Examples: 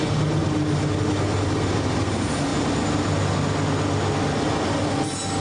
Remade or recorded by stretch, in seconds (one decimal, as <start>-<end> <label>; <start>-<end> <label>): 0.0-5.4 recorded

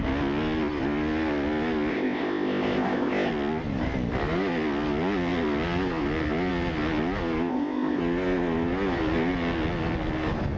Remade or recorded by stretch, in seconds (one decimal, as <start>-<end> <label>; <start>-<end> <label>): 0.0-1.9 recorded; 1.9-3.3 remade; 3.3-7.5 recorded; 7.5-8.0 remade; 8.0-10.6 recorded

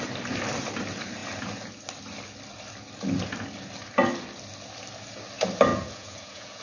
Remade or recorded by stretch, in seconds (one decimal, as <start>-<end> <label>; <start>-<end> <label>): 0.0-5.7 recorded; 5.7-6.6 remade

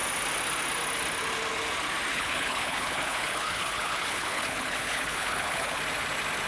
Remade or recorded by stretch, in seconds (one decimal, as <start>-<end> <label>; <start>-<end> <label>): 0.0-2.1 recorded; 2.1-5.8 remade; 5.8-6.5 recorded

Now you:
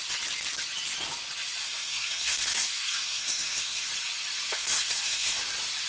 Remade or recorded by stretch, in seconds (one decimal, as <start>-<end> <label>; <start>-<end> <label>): 0.0-1.6 recorded; 1.6-3.9 remade; 3.9-4.5 recorded; 4.5-5.4 remade; 5.4-5.9 recorded